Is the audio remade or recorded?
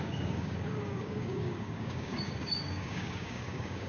remade